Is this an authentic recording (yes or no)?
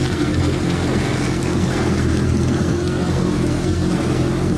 no